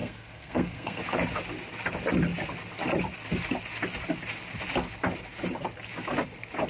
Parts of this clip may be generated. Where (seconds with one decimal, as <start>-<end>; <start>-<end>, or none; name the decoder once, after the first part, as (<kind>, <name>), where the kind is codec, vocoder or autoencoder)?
0.0-1.0 (codec, SNAC)